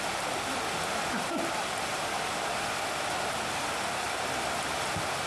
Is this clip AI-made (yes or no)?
no